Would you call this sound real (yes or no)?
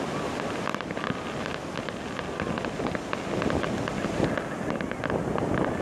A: yes